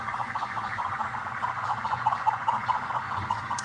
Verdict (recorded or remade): remade